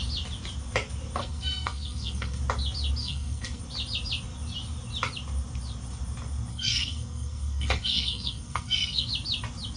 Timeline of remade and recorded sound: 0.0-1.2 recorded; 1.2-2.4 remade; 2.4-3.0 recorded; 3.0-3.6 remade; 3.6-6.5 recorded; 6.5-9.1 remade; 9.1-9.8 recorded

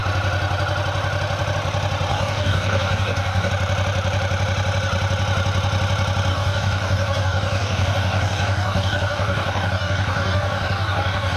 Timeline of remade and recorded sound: 0.0-2.1 recorded; 2.1-3.5 remade; 3.5-6.3 recorded; 6.3-11.4 remade

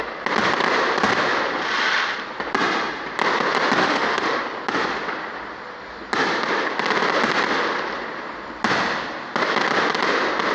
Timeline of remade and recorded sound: 0.0-3.8 recorded; 3.8-4.4 remade; 4.4-10.5 recorded